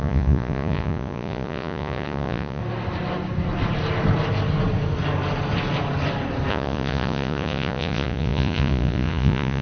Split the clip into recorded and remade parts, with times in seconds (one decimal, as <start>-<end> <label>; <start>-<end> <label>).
0.0-2.6 remade; 2.6-6.5 recorded; 6.5-9.6 remade